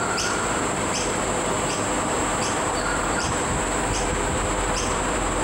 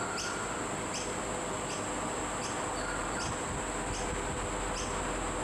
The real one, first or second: second